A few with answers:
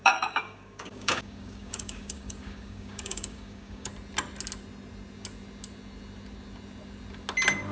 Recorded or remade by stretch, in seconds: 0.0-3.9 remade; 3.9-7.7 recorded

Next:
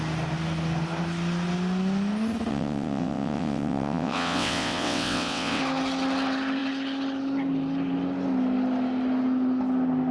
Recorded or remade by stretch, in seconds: 0.0-2.5 recorded; 2.5-5.6 remade; 5.6-10.1 recorded

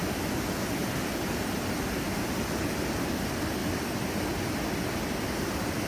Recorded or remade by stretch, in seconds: 0.0-5.9 recorded

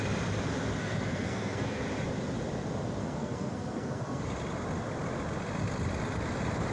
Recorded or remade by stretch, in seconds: 0.0-0.8 recorded; 0.8-1.8 remade; 1.8-3.0 recorded; 3.0-4.2 remade; 4.2-6.7 recorded

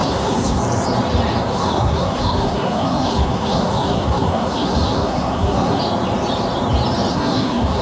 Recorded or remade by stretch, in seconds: 0.0-0.6 remade; 0.6-1.5 recorded; 1.5-5.8 remade; 5.8-7.1 recorded; 7.1-7.8 remade

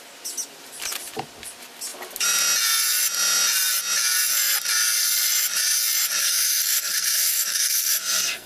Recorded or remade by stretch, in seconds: 0.0-6.2 recorded; 6.2-8.5 remade

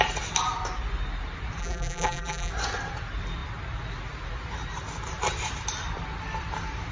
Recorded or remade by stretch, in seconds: 0.0-1.6 recorded; 1.6-2.5 remade; 2.5-6.9 recorded

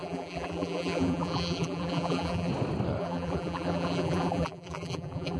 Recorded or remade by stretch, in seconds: 0.0-2.5 remade; 2.5-3.0 recorded; 3.0-5.4 remade